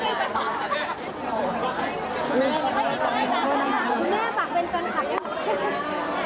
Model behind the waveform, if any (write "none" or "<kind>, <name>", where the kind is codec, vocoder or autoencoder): none